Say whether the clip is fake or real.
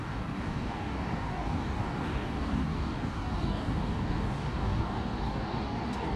fake